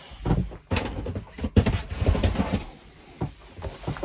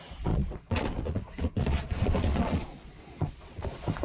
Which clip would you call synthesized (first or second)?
second